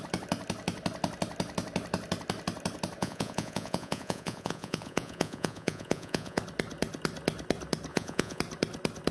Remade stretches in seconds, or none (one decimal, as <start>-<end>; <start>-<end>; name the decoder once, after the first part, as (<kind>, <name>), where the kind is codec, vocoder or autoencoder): 3.0-6.4 (vocoder, Vocos); 7.9-8.4